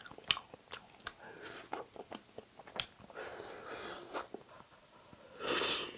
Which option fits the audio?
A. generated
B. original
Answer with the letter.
B